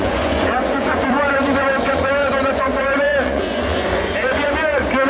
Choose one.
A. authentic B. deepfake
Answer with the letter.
B